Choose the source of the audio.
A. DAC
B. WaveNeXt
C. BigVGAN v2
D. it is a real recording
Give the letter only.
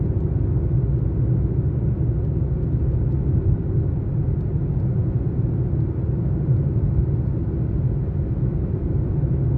D